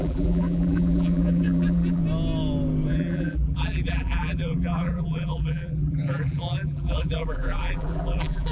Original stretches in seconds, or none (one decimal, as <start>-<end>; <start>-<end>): 2.0-2.9